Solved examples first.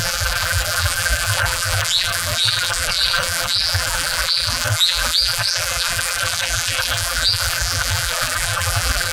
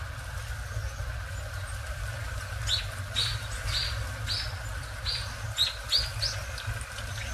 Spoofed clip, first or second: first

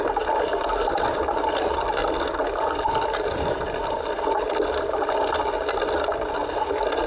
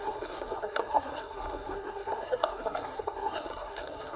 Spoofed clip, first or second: second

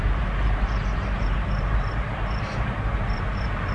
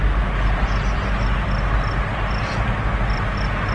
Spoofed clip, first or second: first